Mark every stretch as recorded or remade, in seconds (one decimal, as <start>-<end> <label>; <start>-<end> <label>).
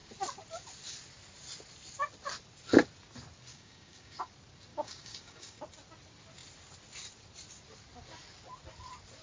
0.0-3.5 recorded; 3.5-4.3 remade; 4.3-4.7 recorded; 4.7-5.6 remade; 5.6-9.2 recorded